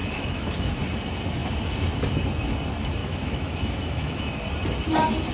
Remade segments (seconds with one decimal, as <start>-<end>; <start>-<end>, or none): 0.0-0.7; 3.0-4.4